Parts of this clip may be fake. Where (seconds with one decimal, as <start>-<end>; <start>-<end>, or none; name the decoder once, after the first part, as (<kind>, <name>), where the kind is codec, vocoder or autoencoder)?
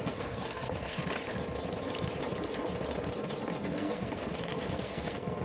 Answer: 0.0-1.0 (codec, SNAC); 3.6-5.4